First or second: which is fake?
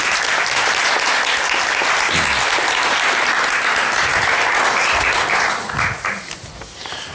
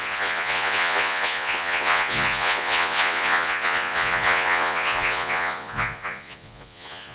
second